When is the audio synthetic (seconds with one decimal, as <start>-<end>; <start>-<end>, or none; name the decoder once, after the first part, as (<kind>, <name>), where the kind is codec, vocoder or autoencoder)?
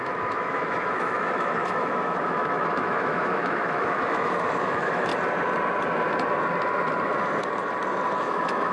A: 0.0-5.1 (autoencoder, DAC-VAE); 8.2-8.7